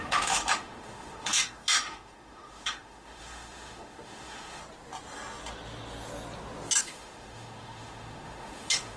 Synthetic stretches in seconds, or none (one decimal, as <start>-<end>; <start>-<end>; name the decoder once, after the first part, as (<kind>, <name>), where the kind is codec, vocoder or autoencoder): 0.0-4.6 (autoencoder, DAC-VAE); 6.8-9.0